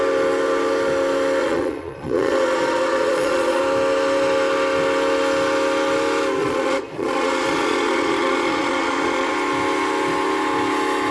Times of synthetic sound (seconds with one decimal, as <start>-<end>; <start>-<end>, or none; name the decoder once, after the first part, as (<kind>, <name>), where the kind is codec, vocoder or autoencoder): 1.4-3.6 (vocoder, Vocos); 6.4-9.3